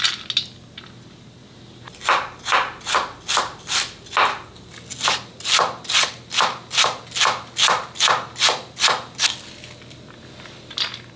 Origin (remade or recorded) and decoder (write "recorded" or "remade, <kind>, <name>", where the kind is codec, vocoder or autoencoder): recorded